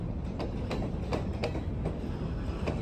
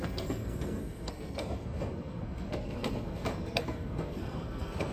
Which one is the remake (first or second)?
second